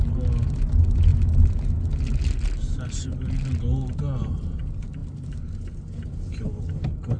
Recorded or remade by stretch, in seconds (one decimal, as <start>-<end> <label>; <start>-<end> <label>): 0.0-7.2 recorded